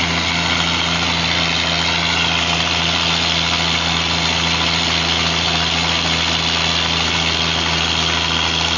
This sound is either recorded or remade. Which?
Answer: recorded